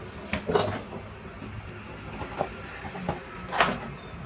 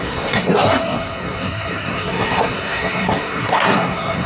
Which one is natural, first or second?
first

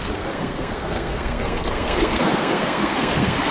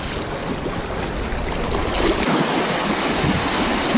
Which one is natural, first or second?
second